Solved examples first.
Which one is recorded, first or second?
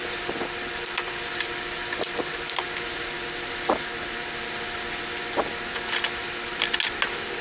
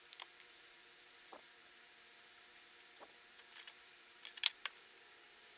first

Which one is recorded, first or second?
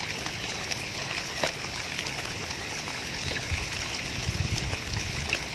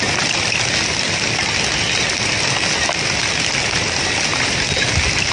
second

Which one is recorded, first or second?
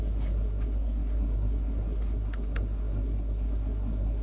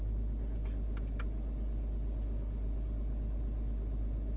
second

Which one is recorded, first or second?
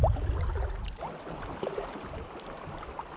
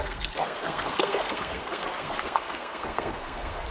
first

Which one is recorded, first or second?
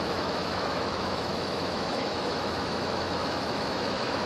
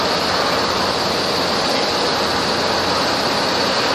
second